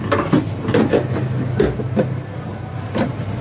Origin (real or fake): real